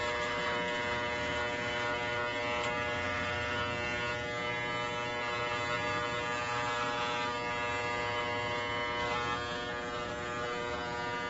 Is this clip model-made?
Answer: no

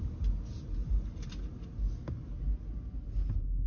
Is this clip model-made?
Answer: no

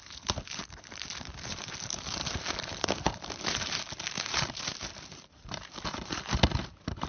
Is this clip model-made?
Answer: yes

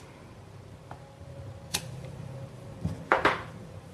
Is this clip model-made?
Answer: yes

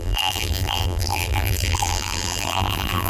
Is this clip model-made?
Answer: yes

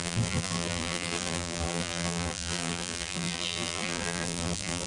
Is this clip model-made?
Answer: yes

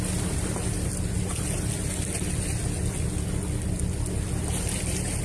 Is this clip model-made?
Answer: no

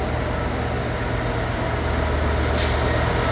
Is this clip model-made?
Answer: no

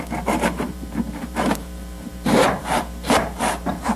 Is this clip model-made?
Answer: yes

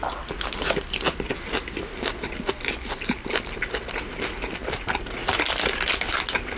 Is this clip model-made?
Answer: no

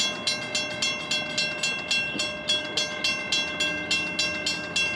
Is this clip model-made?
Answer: no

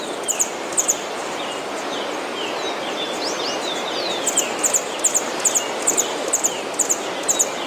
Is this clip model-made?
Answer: no